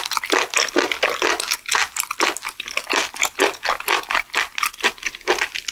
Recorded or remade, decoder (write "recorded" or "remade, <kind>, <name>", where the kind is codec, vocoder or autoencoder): recorded